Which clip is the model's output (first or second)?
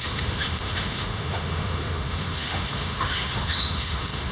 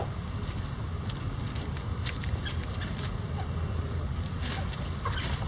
first